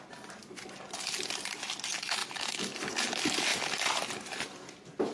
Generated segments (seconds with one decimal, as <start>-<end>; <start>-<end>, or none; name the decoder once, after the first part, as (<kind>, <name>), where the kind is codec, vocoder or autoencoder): 2.2-2.9 (autoencoder, DAC-VAE)